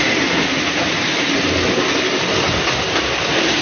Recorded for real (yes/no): yes